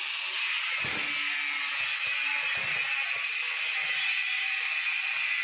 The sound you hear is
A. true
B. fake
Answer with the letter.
A